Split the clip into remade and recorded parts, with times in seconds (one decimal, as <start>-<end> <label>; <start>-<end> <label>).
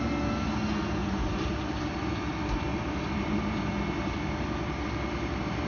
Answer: 0.0-1.0 recorded; 1.0-2.1 remade; 2.1-2.7 recorded; 2.7-3.7 remade; 3.7-5.7 recorded